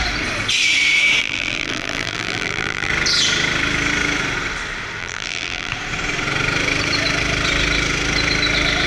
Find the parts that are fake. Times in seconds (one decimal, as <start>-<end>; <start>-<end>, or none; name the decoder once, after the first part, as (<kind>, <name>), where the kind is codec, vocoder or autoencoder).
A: 1.2-2.9 (vocoder, BigVGAN v2); 5.0-5.7